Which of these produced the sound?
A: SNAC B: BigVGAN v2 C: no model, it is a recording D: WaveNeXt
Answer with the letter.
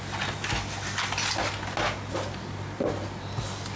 C